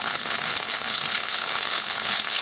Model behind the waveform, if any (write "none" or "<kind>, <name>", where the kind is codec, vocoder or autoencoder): codec, HILCodec